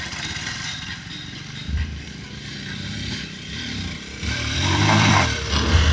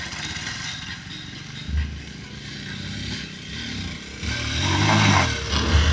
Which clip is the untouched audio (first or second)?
second